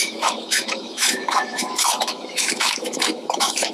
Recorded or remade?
remade